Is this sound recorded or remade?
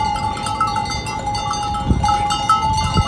recorded